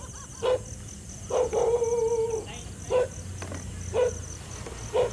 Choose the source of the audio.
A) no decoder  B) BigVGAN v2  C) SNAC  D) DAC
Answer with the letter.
A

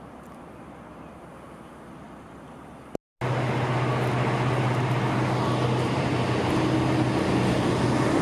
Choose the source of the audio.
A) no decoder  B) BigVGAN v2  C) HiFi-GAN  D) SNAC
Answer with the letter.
A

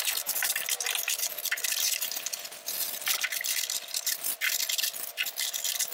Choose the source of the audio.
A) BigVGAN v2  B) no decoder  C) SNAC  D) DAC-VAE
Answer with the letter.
B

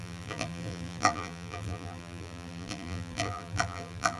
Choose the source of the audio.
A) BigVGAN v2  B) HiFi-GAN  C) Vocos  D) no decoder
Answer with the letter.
A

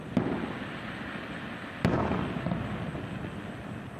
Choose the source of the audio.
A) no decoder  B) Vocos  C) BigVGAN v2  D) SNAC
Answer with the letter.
A